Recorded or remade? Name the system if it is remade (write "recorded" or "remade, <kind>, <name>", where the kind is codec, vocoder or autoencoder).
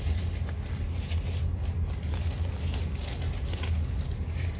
recorded